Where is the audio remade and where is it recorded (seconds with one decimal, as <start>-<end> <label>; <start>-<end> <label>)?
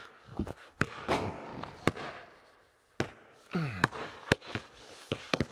0.0-1.5 remade; 1.5-3.3 recorded; 3.3-5.5 remade